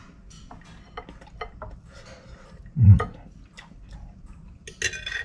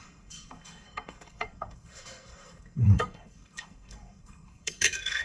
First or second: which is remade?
second